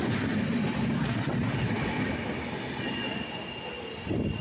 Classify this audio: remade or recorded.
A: recorded